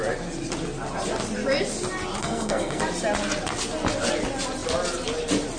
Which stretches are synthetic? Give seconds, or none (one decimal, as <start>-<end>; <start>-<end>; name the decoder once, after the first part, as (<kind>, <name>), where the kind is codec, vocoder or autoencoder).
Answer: 2.2-2.8 (codec, SNAC)